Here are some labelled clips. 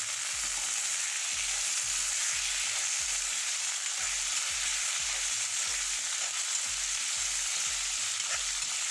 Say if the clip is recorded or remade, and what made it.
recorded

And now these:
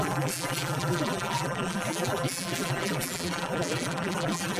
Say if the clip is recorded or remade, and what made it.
remade, vocoder, BigVGAN v2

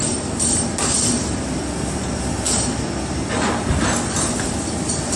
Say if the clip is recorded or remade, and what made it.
recorded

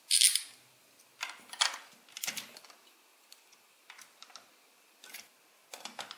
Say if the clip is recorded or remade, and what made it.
recorded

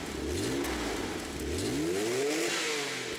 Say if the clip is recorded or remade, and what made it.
recorded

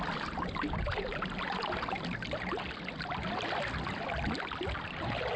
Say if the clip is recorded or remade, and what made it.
recorded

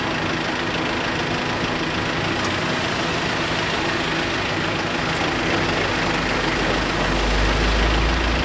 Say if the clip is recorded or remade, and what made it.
recorded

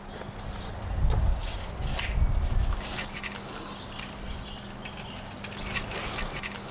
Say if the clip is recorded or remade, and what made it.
recorded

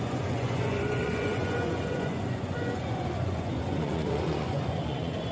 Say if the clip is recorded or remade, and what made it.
remade, vocoder, Vocos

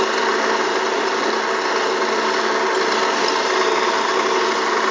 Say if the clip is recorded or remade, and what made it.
recorded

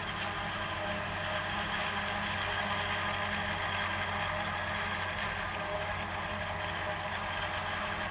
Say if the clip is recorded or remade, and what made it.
recorded